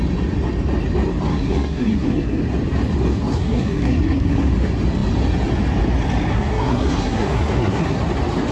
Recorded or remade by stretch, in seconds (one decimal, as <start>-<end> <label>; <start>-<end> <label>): 0.0-1.3 recorded; 1.3-2.4 remade; 2.4-3.3 recorded; 3.3-4.5 remade; 4.5-6.3 recorded; 6.3-8.0 remade; 8.0-8.5 recorded